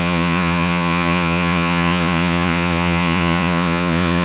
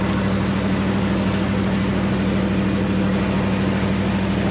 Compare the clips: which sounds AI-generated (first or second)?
first